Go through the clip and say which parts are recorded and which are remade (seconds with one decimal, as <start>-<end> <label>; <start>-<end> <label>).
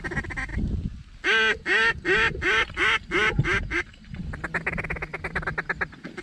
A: 0.0-6.2 recorded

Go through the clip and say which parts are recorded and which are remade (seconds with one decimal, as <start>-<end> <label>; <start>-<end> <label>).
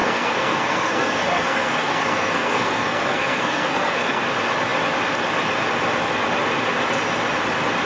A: 0.0-4.2 remade; 4.2-7.9 recorded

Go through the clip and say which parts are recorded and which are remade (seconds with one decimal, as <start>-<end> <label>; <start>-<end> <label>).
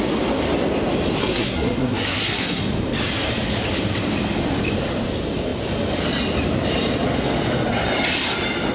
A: 0.0-1.2 recorded; 1.2-2.6 remade; 2.6-8.7 recorded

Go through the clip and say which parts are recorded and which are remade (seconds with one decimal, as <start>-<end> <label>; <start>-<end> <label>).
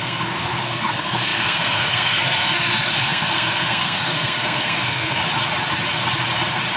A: 0.0-5.2 remade; 5.2-6.8 recorded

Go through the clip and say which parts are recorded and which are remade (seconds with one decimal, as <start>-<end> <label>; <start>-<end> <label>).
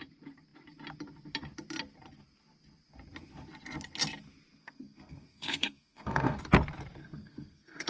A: 0.0-4.6 recorded; 4.6-6.4 remade; 6.4-7.0 recorded; 7.0-7.9 remade